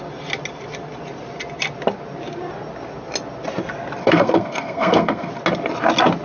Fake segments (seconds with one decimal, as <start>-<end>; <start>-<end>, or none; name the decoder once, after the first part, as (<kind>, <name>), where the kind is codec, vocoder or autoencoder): 4.0-5.3 (codec, SNAC)